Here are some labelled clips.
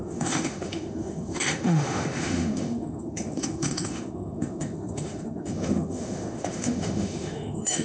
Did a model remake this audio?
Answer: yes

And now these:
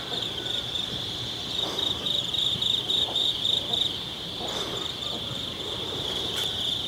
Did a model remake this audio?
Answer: yes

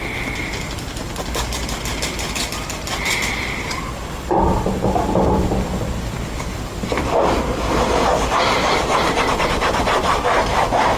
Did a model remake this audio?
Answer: no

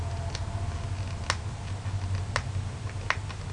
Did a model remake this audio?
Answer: no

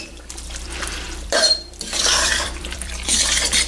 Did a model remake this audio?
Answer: yes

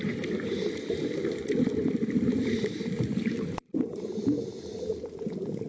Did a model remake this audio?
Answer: yes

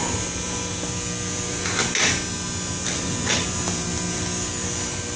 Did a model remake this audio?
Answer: no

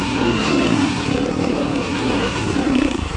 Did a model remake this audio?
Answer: yes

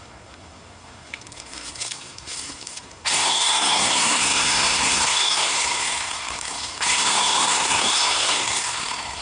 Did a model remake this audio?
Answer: yes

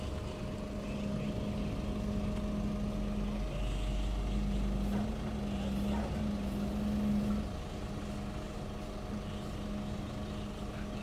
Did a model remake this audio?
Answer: no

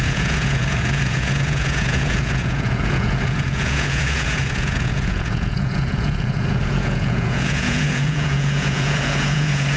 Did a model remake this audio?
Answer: yes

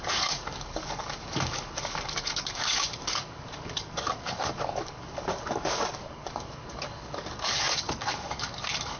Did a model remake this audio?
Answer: yes